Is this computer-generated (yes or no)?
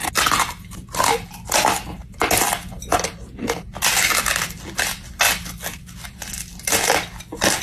no